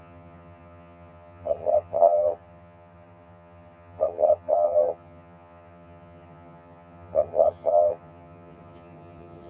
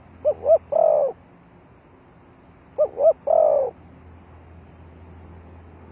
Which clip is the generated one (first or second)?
first